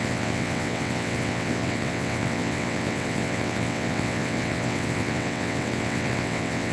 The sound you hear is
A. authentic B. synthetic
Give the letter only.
B